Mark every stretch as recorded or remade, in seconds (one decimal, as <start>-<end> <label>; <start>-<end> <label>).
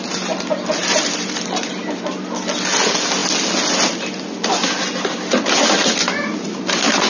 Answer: 0.0-0.8 recorded; 0.8-1.7 remade; 1.7-7.1 recorded